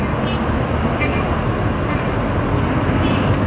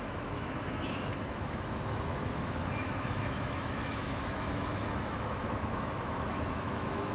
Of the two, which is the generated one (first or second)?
second